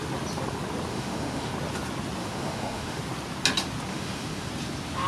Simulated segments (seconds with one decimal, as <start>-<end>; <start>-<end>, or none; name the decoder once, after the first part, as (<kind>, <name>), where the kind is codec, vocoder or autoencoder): 0.9-1.5 (autoencoder, DAC-VAE); 2.2-3.0; 3.9-4.5